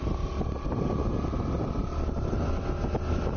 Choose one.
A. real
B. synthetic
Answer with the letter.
A